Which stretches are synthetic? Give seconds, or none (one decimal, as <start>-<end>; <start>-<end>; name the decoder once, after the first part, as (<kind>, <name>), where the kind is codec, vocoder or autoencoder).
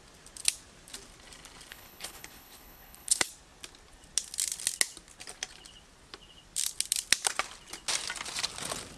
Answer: 1.7-3.3 (codec, HILCodec)